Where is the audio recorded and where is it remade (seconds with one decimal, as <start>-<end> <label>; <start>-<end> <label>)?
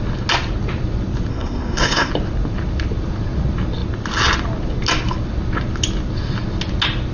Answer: 0.0-1.3 recorded; 1.3-2.1 remade; 2.1-7.1 recorded